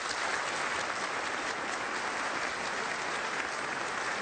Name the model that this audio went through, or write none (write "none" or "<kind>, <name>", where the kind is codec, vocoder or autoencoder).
none